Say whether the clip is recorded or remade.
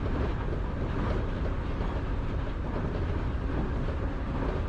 recorded